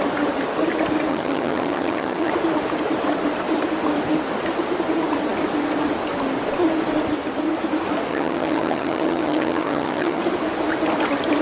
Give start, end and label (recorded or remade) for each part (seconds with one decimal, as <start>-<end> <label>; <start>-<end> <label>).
0.0-1.1 recorded; 1.1-2.3 remade; 2.3-8.1 recorded; 8.1-10.2 remade; 10.2-11.4 recorded